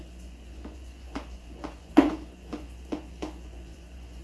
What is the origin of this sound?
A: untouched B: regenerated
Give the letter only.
B